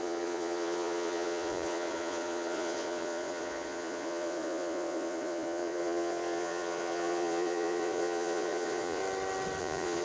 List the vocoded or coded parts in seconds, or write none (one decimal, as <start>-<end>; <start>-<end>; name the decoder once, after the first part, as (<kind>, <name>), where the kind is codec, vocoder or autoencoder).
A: 0.0-9.0 (vocoder, Vocos); 9.6-10.0